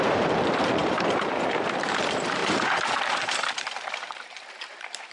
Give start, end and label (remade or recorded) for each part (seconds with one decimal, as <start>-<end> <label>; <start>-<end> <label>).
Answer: 0.0-5.1 remade